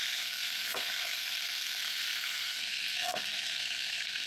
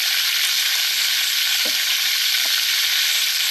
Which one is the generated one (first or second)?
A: first